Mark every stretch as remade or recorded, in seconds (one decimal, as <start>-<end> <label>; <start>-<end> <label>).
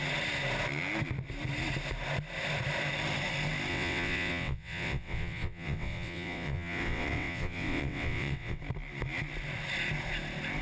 0.0-3.7 recorded; 3.7-8.6 remade; 8.6-10.6 recorded